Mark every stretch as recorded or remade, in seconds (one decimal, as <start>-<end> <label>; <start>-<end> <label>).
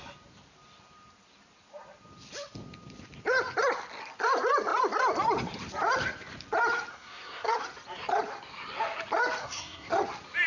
0.0-6.9 recorded; 6.9-7.6 remade; 7.6-9.4 recorded; 9.4-9.9 remade; 9.9-10.5 recorded